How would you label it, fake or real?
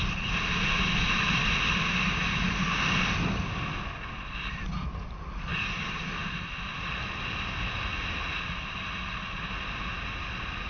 real